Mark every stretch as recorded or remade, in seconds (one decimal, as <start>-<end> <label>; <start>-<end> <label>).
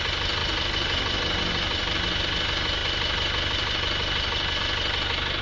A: 0.0-5.4 recorded